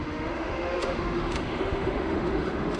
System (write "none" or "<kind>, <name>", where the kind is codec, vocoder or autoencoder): autoencoder, DAC-VAE